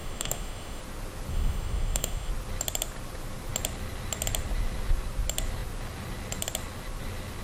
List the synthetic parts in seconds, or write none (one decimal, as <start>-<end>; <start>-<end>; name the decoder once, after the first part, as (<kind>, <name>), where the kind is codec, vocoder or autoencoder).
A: 0.0-0.8 (autoencoder, DAC-VAE); 1.3-2.3